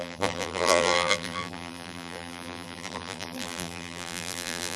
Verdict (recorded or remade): remade